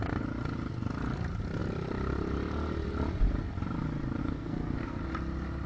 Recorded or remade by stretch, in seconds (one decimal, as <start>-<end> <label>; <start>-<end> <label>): 0.0-4.2 recorded; 4.2-5.0 remade; 5.0-5.7 recorded